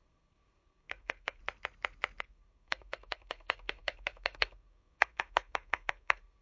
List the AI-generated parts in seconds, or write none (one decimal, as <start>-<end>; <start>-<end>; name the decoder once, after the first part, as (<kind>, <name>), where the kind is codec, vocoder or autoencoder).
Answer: 0.0-1.4 (codec, SNAC); 2.2-6.4